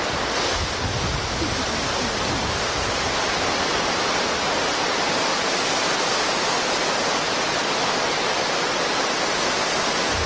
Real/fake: real